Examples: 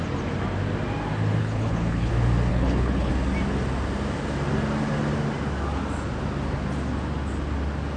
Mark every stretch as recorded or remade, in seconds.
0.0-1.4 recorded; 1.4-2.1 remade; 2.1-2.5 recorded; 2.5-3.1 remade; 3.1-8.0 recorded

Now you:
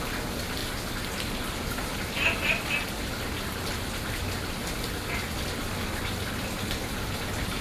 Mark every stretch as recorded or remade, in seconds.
0.0-7.6 recorded

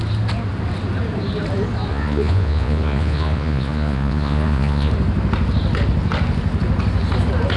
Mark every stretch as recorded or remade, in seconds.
0.0-1.9 recorded; 1.9-4.9 remade; 4.9-7.6 recorded

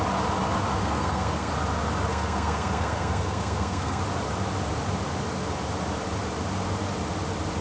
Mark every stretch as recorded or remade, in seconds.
0.0-0.8 recorded; 0.8-1.5 remade; 1.5-2.1 recorded; 2.1-4.0 remade; 4.0-7.6 recorded

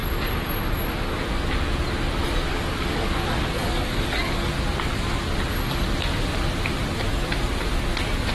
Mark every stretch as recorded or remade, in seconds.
0.0-2.5 recorded; 2.5-4.5 remade; 4.5-8.3 recorded

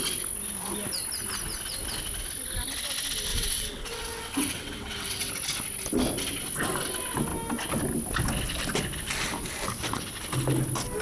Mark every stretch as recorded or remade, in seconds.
0.0-3.3 recorded; 3.3-5.3 remade; 5.3-11.0 recorded

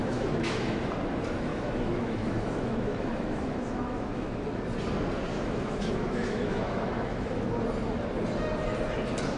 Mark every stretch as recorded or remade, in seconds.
0.0-0.9 remade; 0.9-1.5 recorded; 1.5-4.4 remade; 4.4-5.3 recorded; 5.3-7.5 remade; 7.5-9.4 recorded